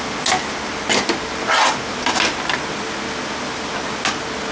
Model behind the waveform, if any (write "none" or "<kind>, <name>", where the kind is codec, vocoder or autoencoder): none